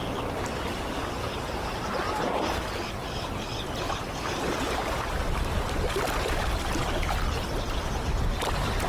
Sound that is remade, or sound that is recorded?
recorded